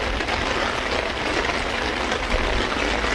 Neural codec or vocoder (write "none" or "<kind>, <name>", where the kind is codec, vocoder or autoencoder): none